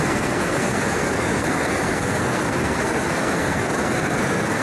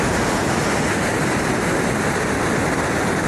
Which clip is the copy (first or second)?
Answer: first